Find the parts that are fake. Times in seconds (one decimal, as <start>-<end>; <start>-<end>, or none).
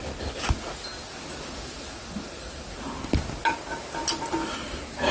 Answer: none